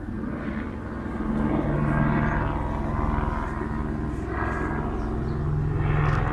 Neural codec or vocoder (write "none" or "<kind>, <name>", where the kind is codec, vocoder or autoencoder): none